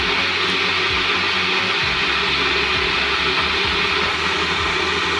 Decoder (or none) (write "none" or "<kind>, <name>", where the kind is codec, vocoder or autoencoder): none